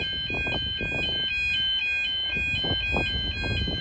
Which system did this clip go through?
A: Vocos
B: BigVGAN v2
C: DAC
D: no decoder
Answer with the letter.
D